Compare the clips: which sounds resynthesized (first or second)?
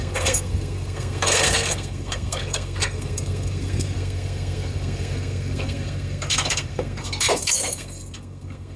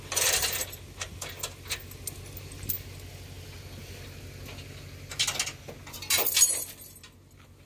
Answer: first